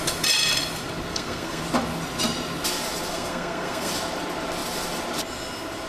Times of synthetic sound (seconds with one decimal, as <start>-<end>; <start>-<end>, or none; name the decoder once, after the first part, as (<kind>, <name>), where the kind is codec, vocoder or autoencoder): 1.1-1.6 (codec, SNAC); 3.1-3.9